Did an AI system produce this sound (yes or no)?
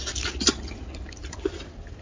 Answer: no